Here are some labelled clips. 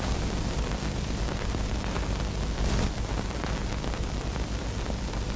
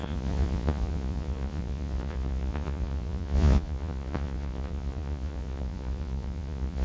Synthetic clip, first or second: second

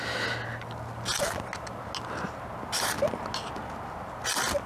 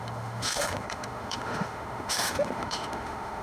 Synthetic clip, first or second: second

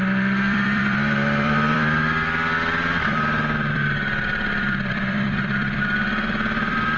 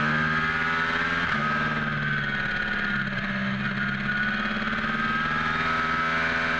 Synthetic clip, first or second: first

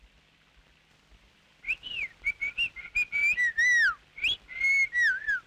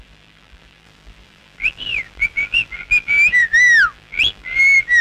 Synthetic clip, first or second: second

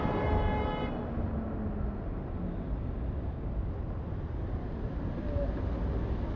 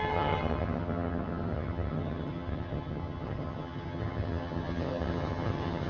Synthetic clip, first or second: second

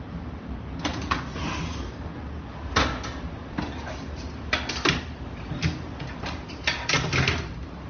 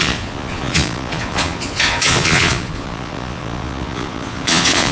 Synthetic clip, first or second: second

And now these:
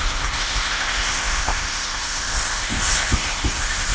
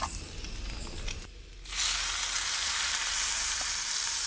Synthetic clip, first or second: first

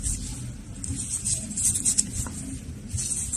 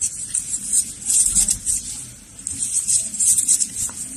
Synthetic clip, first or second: second